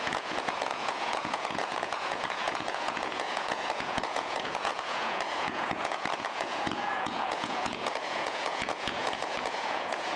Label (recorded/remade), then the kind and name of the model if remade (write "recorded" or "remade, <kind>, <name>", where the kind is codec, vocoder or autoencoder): remade, vocoder, Vocos